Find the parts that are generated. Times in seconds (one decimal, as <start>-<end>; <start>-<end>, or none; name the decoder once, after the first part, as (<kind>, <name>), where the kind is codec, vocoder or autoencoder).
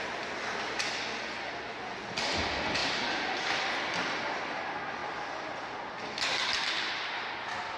none